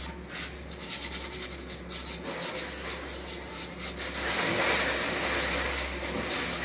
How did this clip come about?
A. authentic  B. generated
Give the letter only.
A